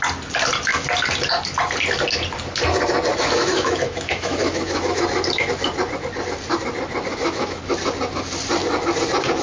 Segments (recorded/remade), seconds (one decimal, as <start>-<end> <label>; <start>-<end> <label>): 0.0-3.1 recorded; 3.1-5.0 remade; 5.0-7.1 recorded; 7.1-7.6 remade; 7.6-9.4 recorded